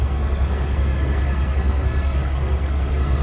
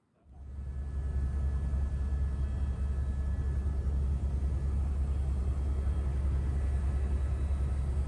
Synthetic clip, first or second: first